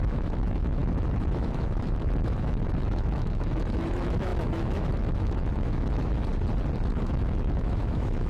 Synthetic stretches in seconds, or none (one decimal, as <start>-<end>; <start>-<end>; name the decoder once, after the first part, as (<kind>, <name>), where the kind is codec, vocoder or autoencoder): 0.0-6.3 (autoencoder, DAC-VAE); 6.9-8.3